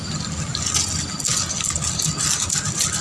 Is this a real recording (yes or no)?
yes